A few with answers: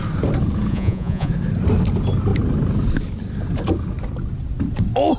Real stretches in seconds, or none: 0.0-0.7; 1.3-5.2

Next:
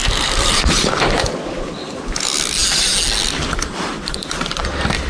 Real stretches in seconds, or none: 0.9-3.9; 4.6-5.1

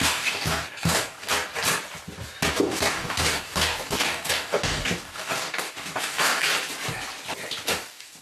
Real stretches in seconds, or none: 1.5-2.5; 6.5-7.7

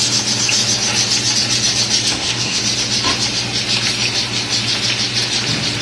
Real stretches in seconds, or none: 0.0-2.1; 2.6-5.8

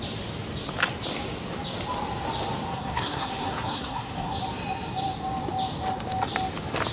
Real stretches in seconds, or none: 0.0-2.7; 4.4-6.9

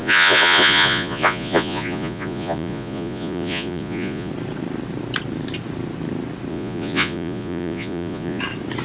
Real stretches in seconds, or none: 4.3-6.5; 8.4-8.8